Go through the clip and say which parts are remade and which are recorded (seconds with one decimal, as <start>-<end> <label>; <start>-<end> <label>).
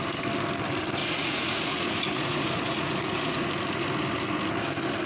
0.0-1.0 recorded; 1.0-3.5 remade; 3.5-5.1 recorded